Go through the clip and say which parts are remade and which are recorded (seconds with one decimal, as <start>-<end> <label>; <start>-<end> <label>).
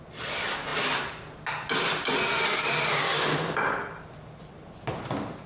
0.0-5.5 recorded